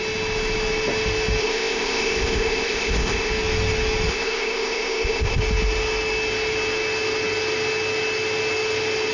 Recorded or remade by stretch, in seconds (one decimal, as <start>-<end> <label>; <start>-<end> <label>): 0.0-1.4 recorded; 1.4-3.3 remade; 3.3-4.1 recorded; 4.1-5.4 remade; 5.4-9.1 recorded